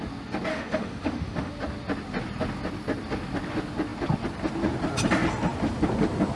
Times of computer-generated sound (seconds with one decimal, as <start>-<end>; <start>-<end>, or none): 0.5-1.5